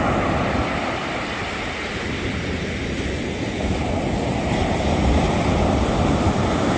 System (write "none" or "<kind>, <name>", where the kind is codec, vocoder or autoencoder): none